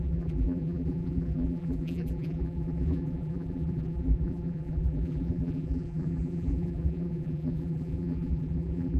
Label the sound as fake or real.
fake